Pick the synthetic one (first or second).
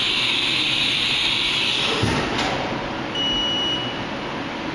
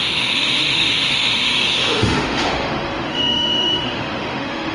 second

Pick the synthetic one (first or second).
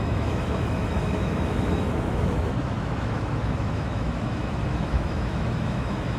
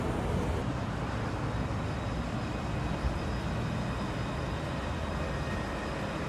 first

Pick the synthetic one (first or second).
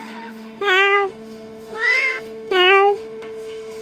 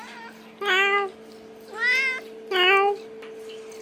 first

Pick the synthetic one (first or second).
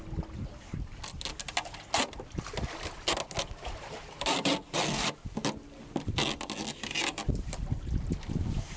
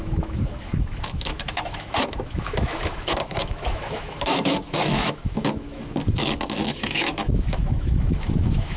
second